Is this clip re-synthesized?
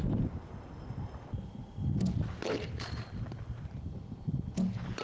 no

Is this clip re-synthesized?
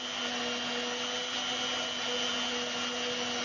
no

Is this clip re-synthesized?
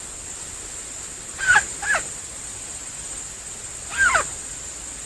no